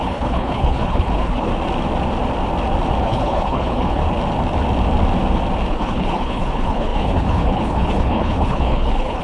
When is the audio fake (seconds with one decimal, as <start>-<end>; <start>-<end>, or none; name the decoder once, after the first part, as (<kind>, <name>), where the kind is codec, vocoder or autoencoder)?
0.0-1.5 (codec, HILCodec); 3.0-4.0; 5.7-9.2